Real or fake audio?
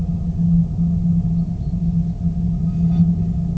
real